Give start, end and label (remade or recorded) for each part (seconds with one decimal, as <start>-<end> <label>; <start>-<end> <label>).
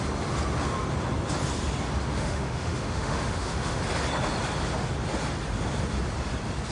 0.0-2.1 recorded; 2.1-3.8 remade; 3.8-6.7 recorded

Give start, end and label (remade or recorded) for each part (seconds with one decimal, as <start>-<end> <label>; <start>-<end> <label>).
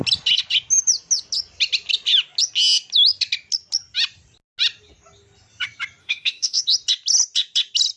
0.0-6.0 recorded; 6.0-6.6 remade; 6.6-8.0 recorded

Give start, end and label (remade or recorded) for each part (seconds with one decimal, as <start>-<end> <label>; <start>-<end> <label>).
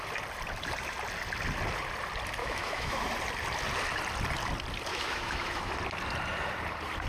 0.0-2.4 recorded; 2.4-3.1 remade; 3.1-4.9 recorded; 4.9-5.7 remade; 5.7-7.1 recorded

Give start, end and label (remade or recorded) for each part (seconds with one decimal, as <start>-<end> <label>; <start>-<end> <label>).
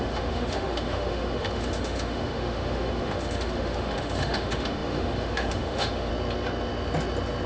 0.0-6.1 remade; 6.1-7.5 recorded